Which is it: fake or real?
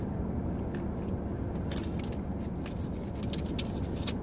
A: real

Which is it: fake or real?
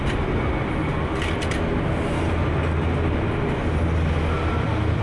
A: real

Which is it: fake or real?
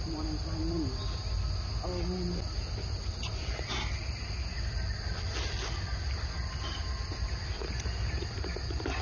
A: real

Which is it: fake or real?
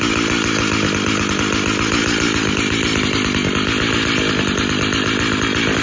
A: real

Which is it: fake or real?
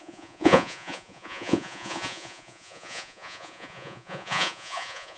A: fake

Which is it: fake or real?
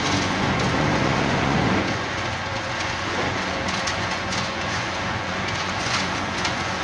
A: fake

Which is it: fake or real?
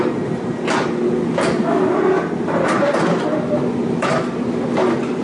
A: real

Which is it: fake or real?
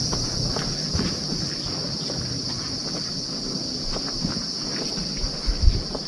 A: real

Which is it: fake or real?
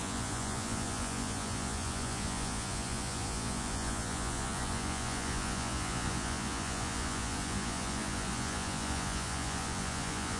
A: fake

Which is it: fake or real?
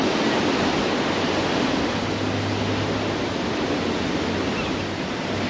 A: real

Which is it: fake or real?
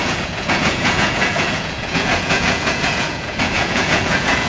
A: fake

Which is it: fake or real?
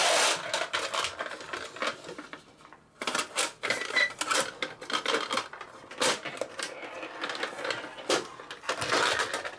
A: real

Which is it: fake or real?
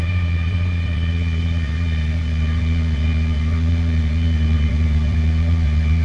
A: fake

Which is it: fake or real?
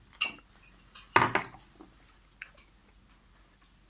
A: real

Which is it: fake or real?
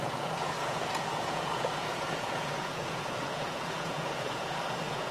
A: fake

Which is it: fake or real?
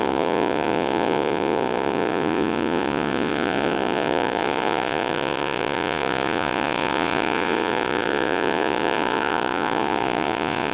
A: fake